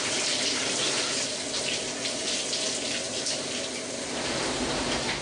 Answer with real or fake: real